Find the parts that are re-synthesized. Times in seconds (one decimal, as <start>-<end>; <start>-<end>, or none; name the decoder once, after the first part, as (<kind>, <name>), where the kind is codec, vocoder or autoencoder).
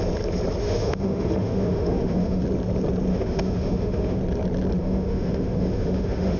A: 0.6-2.4 (autoencoder, DAC-VAE); 3.1-4.2; 4.8-6.4